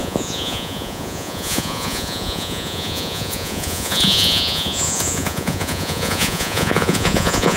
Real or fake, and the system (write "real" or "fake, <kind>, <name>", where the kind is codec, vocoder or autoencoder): fake, vocoder, Vocos